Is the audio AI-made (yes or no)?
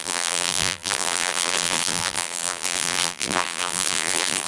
yes